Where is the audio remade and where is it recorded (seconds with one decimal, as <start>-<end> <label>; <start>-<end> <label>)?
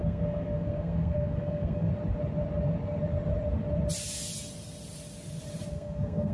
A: 0.0-1.9 remade; 1.9-5.7 recorded; 5.7-6.3 remade